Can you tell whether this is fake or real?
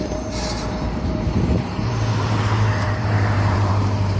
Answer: fake